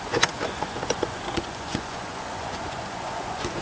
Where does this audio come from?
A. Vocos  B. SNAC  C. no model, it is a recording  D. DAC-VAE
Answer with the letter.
A